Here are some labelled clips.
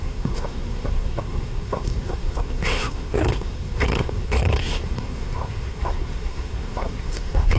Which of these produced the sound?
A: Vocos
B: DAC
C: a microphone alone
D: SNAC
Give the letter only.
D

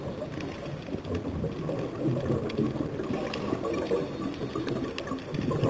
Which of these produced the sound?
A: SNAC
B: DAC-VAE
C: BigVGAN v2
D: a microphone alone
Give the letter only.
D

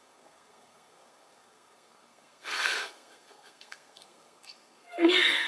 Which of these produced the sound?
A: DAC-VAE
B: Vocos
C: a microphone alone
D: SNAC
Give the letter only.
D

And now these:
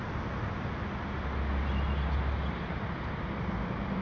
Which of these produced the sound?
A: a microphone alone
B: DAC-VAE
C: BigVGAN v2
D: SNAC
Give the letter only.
A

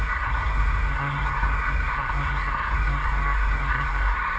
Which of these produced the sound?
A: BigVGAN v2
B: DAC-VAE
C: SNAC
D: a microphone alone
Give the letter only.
C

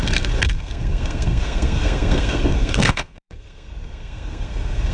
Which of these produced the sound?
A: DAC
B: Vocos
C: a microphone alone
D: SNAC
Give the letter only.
D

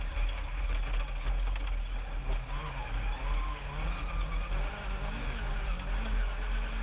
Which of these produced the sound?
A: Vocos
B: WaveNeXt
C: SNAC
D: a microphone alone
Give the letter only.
D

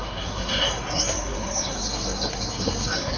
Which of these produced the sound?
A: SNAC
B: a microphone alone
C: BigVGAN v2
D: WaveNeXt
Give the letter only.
A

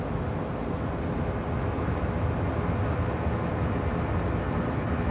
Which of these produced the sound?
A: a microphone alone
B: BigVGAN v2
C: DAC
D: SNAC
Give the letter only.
A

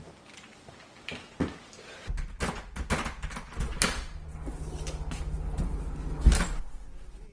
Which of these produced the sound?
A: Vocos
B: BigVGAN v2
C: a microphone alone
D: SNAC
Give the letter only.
C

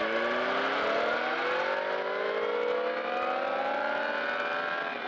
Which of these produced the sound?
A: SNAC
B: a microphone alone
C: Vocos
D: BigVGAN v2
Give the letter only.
B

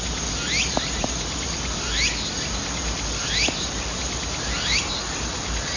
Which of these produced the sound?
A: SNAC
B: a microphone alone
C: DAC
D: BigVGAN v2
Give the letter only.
B